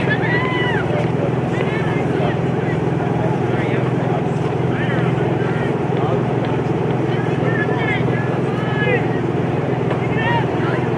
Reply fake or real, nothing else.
fake